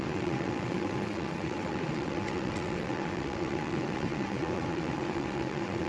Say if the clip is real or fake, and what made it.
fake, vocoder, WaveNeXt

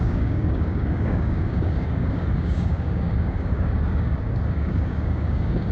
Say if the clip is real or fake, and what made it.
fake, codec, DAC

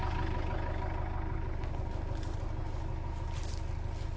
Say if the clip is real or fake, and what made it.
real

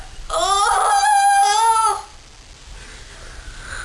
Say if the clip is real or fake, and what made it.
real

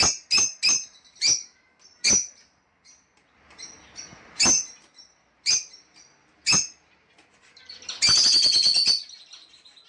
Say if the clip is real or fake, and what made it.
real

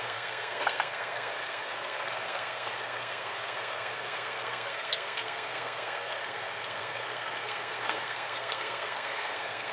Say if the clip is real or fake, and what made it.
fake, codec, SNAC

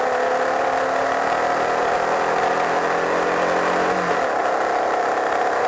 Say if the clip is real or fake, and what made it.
real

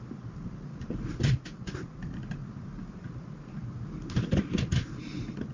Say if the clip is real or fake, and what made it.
real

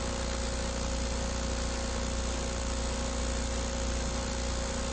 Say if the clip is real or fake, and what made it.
real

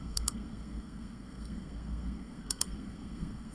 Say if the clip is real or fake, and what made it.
fake, codec, SNAC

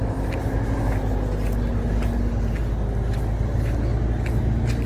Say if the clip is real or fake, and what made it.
real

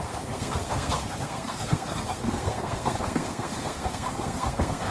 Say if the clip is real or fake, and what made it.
fake, codec, SNAC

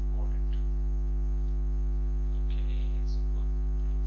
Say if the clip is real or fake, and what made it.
fake, vocoder, BigVGAN v2